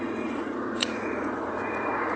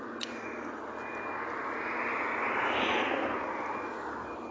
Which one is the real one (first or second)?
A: second